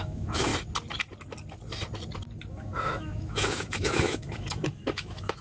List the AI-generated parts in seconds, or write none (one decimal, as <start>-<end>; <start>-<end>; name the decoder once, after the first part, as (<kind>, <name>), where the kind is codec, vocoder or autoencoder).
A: 0.0-0.5 (autoencoder, DAC-VAE); 2.5-5.4